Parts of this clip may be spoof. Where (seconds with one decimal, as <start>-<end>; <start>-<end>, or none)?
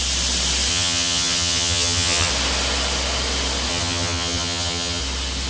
0.7-2.3; 3.7-5.0